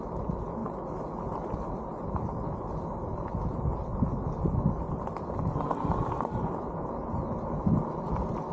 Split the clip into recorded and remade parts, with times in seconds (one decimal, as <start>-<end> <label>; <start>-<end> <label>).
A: 0.0-8.5 recorded